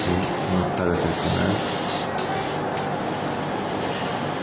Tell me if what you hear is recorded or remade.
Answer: recorded